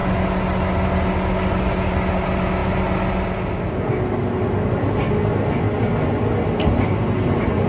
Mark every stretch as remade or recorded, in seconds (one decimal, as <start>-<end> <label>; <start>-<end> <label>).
0.0-7.7 recorded